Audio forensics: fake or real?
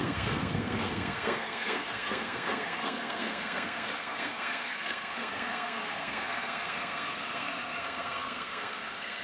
fake